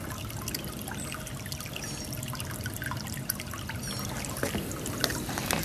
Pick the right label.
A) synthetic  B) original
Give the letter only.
B